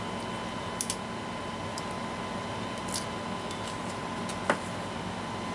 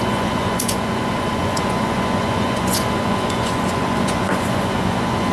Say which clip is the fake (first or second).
second